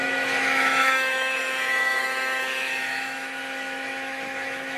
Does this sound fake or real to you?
fake